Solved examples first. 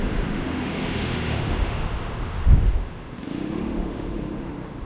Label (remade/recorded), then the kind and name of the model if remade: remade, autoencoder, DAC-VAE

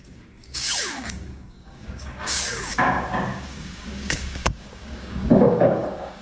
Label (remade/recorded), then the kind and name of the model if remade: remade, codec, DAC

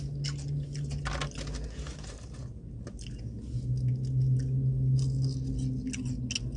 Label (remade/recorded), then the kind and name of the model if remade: recorded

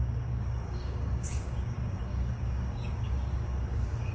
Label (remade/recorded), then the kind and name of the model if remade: remade, codec, DAC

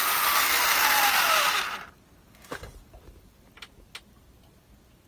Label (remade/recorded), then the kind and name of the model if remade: recorded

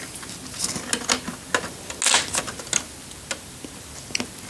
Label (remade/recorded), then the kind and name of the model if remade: recorded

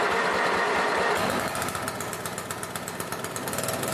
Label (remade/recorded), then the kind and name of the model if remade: recorded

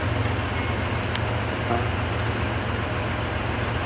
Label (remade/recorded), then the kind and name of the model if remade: recorded